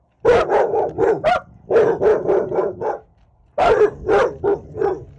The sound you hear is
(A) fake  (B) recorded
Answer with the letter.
B